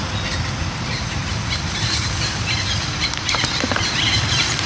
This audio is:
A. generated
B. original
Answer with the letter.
B